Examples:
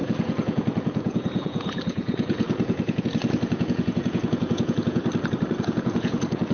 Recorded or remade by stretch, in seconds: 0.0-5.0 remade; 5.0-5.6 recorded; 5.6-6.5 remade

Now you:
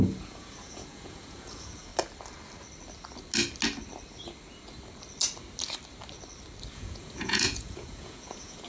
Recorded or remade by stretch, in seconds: 0.0-1.9 remade; 1.9-6.7 recorded; 6.7-8.7 remade

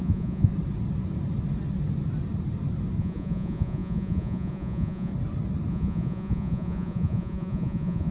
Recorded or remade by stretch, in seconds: 0.0-0.5 remade; 0.5-3.0 recorded; 3.0-5.1 remade; 5.1-5.7 recorded; 5.7-8.1 remade

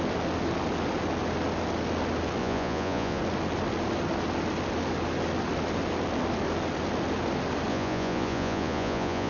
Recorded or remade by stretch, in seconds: 0.0-2.4 recorded; 2.4-3.2 remade; 3.2-7.7 recorded; 7.7-9.3 remade